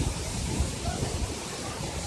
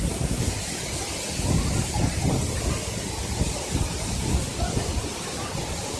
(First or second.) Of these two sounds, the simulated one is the first